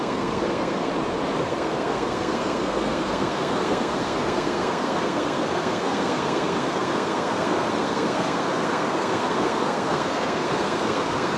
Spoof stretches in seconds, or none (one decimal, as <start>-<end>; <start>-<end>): 0.0-0.9; 1.4-11.4